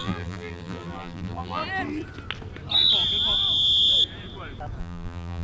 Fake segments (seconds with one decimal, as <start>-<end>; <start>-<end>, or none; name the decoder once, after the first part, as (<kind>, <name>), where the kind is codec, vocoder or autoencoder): 0.0-1.6 (vocoder, BigVGAN v2); 4.8-5.4